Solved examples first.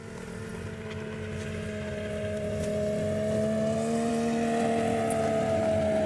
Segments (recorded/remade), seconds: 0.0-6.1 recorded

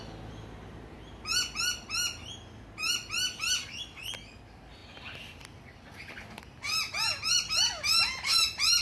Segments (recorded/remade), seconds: 0.0-8.8 recorded

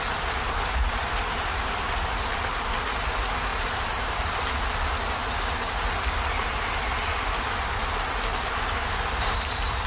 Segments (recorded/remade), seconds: 0.0-3.5 recorded; 3.5-4.3 remade; 4.3-9.9 recorded

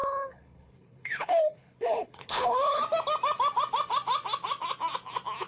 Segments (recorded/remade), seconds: 0.0-2.8 remade; 2.8-5.5 recorded

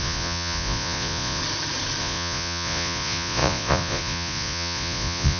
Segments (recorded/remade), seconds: 0.0-1.4 remade; 1.4-2.0 recorded; 2.0-5.4 remade

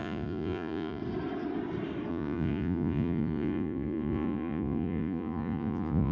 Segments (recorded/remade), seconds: 0.0-1.0 remade; 1.0-2.1 recorded; 2.1-6.1 remade